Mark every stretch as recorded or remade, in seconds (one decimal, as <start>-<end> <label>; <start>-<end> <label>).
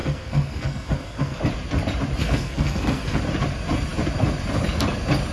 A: 0.0-1.4 remade; 1.4-2.2 recorded; 2.2-3.2 remade; 3.2-5.3 recorded